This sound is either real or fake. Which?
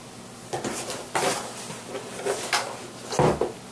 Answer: real